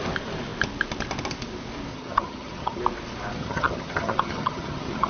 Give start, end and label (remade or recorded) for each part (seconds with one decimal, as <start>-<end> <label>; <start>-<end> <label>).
0.0-1.9 recorded; 1.9-2.8 remade; 2.8-3.4 recorded; 3.4-5.1 remade